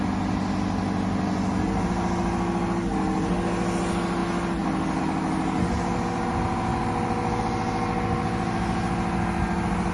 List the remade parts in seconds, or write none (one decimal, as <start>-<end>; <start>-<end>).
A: none